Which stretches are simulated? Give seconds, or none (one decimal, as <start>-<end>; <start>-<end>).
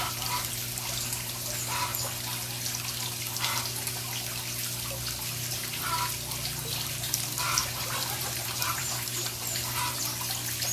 7.6-10.0